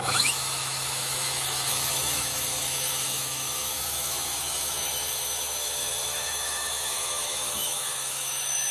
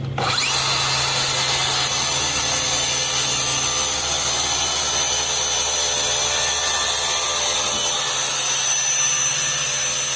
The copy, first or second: first